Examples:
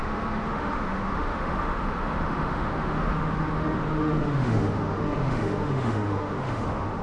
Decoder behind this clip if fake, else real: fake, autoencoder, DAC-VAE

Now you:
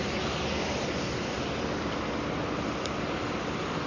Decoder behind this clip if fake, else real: real